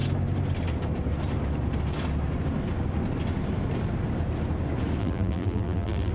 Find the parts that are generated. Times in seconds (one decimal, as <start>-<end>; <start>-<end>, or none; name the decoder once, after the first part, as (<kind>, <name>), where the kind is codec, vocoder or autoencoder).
5.0-6.1 (vocoder, BigVGAN v2)